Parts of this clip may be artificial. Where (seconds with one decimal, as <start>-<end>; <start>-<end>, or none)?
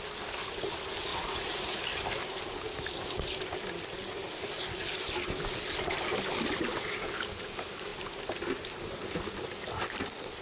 1.1-1.8